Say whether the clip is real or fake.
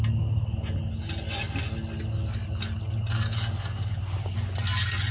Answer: real